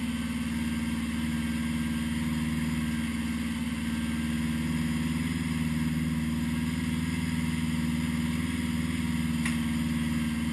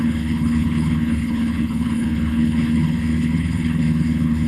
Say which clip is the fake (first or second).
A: second